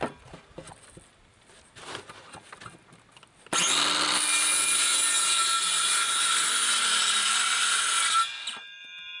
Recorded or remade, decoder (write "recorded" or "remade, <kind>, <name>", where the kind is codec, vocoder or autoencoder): recorded